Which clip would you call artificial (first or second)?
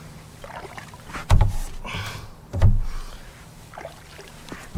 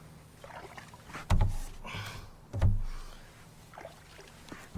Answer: first